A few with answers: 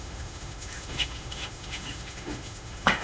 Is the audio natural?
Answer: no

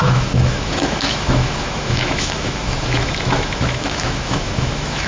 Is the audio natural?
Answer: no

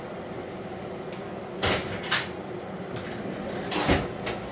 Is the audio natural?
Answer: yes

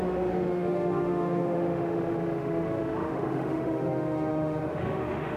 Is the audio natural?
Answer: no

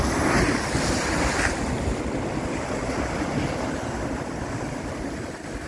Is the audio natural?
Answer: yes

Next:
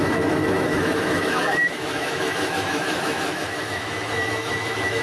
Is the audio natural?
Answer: no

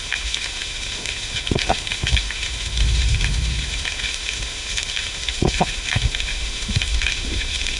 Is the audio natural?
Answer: no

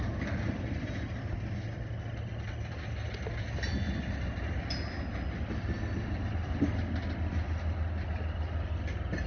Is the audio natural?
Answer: yes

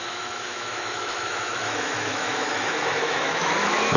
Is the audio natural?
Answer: no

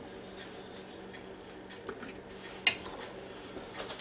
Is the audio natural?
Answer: yes